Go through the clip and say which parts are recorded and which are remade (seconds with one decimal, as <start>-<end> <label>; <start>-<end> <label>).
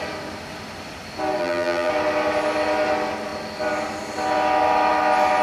0.0-1.4 recorded; 1.4-1.9 remade; 1.9-5.4 recorded